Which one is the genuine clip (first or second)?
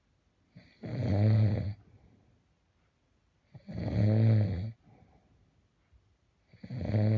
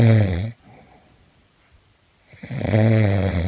first